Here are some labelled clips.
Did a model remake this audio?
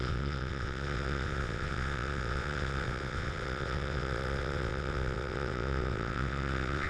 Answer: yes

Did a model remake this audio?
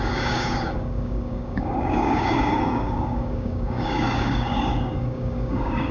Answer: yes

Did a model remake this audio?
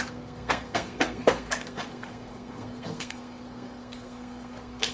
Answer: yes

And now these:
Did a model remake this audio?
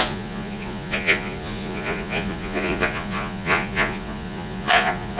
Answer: yes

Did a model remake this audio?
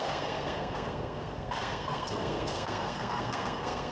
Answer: yes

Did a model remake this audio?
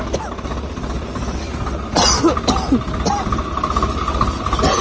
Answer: no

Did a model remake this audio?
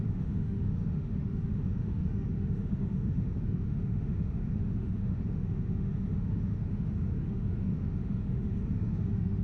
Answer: yes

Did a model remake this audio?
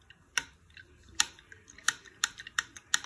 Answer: no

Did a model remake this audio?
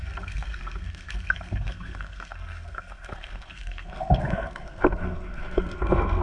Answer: yes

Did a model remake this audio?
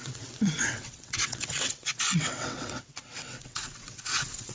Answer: yes